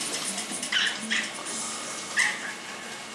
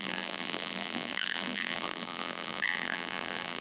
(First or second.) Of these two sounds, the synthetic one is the second